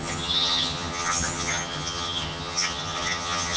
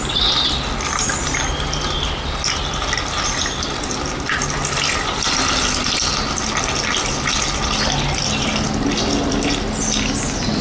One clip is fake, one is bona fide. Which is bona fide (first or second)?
second